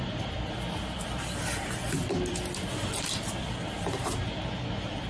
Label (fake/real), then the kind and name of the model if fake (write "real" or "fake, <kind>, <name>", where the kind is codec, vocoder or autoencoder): fake, vocoder, BigVGAN v2